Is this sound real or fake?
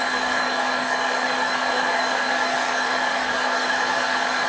fake